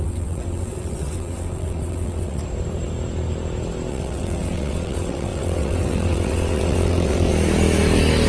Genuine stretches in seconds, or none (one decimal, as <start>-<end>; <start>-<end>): 2.4-3.9; 7.3-8.3